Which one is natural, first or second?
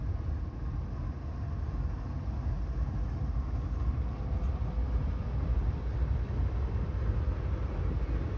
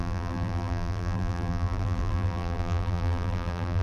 first